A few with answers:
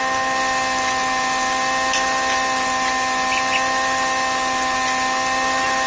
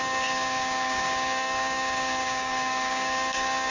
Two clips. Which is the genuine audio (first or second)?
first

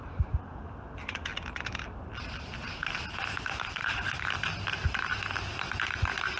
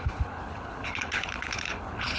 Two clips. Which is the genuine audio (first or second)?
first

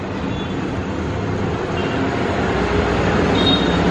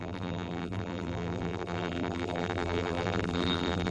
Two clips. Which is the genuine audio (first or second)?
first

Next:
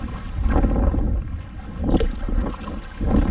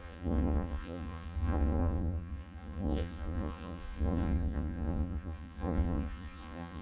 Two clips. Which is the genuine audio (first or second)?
first